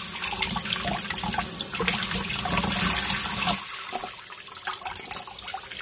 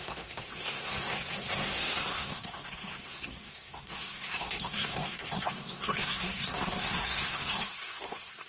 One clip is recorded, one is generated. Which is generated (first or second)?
second